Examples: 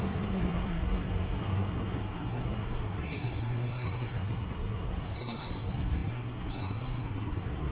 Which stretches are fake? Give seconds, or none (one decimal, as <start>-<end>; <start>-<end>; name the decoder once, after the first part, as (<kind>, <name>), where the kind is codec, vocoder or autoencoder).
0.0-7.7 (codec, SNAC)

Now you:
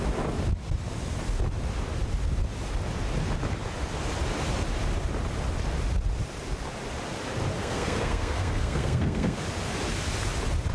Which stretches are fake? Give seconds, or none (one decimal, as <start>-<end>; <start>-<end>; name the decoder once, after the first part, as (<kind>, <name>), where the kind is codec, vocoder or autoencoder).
7.6-9.4 (codec, SNAC)

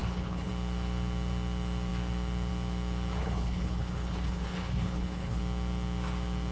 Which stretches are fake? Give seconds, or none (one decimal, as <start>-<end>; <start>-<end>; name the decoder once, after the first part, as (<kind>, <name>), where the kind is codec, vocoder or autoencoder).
0.0-0.5 (codec, HILCodec); 3.2-5.4

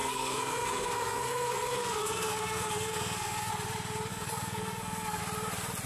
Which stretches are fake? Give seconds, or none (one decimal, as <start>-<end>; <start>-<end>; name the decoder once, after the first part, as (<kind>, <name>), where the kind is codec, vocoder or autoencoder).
0.0-3.5 (codec, SNAC); 4.1-5.2